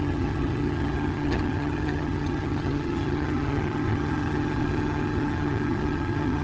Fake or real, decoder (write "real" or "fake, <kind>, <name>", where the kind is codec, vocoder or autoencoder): fake, vocoder, HiFi-GAN